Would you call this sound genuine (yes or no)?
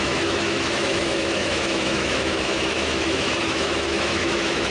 no